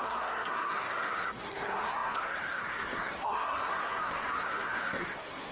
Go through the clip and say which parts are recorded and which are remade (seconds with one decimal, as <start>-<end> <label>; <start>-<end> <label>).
0.0-5.5 remade